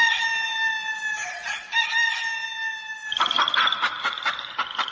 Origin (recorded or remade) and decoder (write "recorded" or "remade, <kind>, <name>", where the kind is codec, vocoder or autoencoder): recorded